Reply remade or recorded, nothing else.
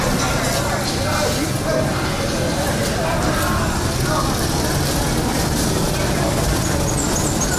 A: recorded